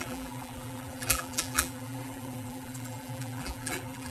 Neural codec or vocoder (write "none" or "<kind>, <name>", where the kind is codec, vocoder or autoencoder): vocoder, BigVGAN v2